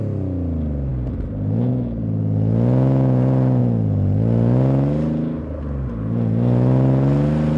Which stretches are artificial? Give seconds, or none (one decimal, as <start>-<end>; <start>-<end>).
none